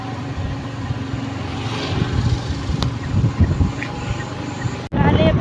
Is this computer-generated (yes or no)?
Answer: no